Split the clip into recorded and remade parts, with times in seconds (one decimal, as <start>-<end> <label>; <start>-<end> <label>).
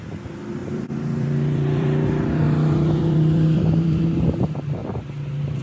0.0-0.6 recorded; 0.6-4.0 remade; 4.0-5.6 recorded